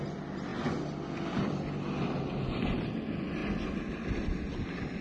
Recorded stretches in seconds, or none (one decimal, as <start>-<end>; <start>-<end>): 0.0-5.0